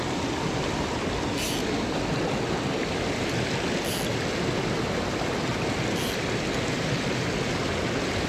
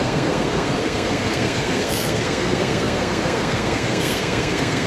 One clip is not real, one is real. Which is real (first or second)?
first